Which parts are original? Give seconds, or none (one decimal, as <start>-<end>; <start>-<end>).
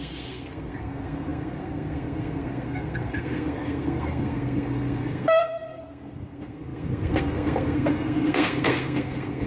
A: none